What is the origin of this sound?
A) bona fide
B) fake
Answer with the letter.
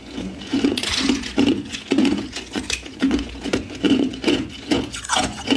B